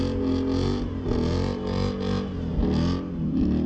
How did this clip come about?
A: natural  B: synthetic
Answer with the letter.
A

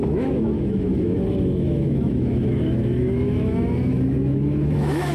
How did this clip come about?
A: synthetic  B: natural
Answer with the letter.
A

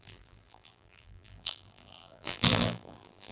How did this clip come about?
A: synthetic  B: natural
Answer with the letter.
A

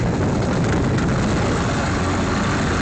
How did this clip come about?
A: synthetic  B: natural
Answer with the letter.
B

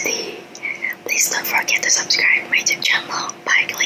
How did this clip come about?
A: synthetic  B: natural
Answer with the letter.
B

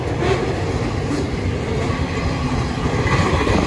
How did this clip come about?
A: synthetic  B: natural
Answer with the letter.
B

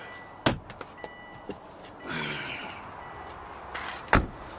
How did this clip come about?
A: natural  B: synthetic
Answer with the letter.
A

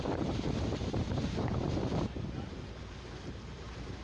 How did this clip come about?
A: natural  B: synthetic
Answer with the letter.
B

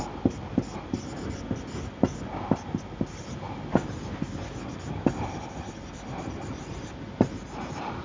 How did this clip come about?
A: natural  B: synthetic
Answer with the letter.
A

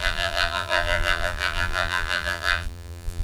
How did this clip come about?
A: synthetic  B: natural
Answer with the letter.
A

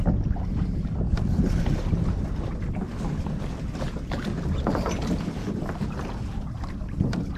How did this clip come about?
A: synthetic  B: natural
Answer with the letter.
B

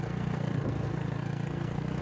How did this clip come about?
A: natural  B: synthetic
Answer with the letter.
B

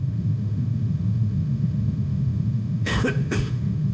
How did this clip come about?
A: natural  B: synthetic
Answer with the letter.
B